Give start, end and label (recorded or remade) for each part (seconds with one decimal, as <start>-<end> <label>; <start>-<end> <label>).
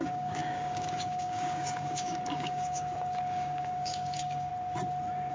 0.0-4.5 remade; 4.5-5.3 recorded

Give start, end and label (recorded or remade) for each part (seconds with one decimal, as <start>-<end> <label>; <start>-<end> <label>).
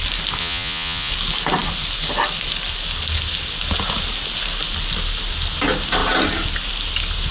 0.0-0.4 recorded; 0.4-1.1 remade; 1.1-7.3 recorded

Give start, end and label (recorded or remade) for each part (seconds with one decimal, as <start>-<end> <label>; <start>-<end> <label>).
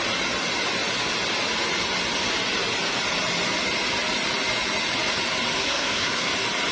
0.0-5.6 recorded; 5.6-6.3 remade; 6.3-6.7 recorded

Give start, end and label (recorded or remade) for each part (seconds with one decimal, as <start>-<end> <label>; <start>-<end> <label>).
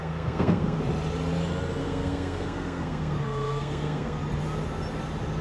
0.0-0.8 remade; 0.8-1.8 recorded; 1.8-4.2 remade; 4.2-5.4 recorded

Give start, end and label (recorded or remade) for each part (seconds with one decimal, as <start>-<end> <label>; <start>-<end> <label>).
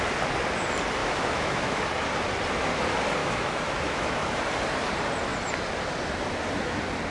0.0-1.0 recorded; 1.0-1.8 remade; 1.8-3.2 recorded; 3.2-4.4 remade; 4.4-7.1 recorded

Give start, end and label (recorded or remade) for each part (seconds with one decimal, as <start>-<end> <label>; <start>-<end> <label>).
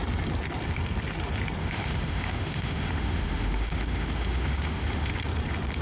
0.0-1.6 recorded; 1.6-5.1 remade; 5.1-5.8 recorded